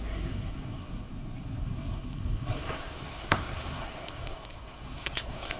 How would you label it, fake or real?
fake